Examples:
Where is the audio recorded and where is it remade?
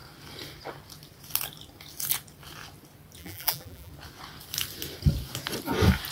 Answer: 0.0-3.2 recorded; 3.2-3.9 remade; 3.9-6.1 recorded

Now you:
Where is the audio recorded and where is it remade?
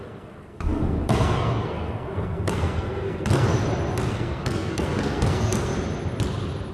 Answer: 0.0-3.5 remade; 3.5-4.1 recorded; 4.1-5.7 remade; 5.7-6.7 recorded